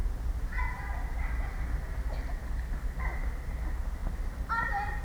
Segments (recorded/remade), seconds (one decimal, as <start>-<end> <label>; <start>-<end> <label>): 0.0-4.0 recorded; 4.0-5.0 remade